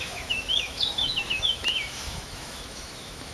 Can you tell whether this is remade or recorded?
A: remade